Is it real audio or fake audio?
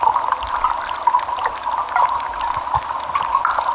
real